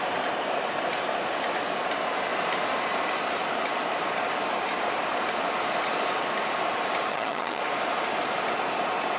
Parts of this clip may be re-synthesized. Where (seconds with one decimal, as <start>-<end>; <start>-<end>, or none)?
7.1-7.6